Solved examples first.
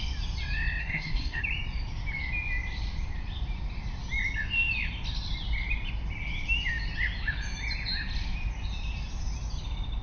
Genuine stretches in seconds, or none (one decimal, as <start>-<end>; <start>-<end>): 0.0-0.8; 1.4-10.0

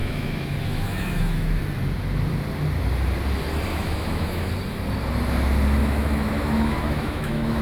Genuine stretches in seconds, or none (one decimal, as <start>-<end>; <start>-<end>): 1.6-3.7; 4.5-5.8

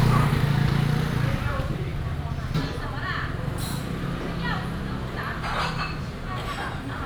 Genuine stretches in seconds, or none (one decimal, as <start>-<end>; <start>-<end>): 0.0-7.1